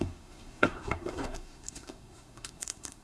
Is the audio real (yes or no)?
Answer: no